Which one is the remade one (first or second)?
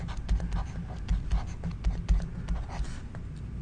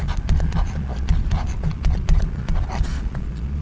second